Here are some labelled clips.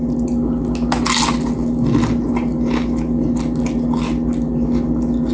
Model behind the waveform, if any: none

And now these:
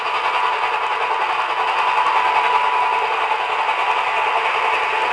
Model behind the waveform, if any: none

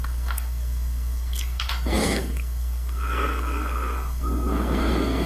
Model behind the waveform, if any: codec, SNAC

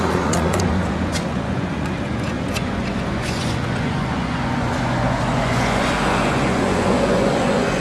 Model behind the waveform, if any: vocoder, Vocos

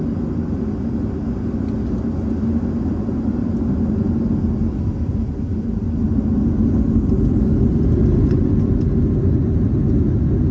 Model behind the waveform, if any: none